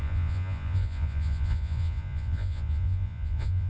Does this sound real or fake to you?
fake